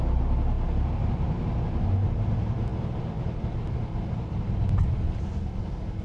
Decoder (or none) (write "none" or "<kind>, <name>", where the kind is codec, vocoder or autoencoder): none